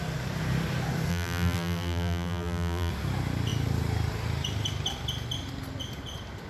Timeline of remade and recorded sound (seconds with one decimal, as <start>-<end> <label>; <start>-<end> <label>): 0.0-1.1 recorded; 1.1-2.9 remade; 2.9-6.5 recorded